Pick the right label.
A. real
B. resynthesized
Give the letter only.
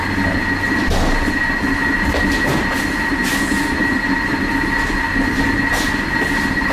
A